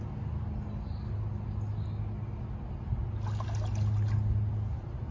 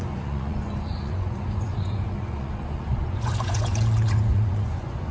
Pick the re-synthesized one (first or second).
second